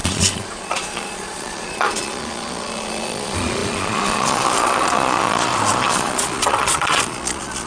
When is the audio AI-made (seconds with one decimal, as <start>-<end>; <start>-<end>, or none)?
0.0-7.7